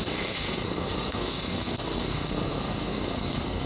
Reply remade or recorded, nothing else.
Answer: remade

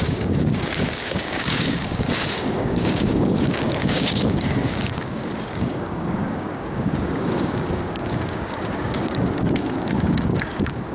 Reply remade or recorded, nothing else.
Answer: remade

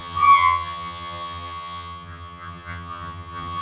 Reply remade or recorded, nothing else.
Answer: remade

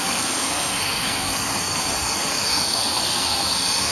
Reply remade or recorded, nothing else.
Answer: remade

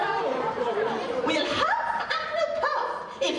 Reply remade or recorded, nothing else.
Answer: remade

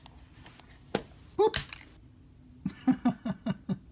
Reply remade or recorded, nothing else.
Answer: recorded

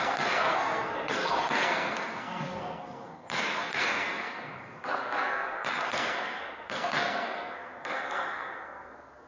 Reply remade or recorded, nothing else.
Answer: remade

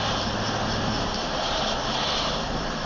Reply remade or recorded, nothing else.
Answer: recorded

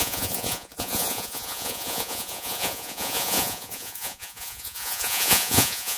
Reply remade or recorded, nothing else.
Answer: remade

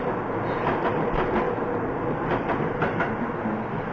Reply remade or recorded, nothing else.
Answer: recorded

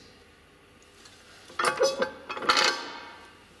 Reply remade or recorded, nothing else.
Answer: recorded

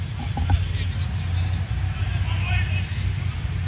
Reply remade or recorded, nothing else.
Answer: recorded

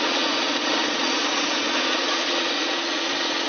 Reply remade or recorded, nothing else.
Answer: remade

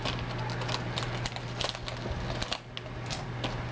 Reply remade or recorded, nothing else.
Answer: recorded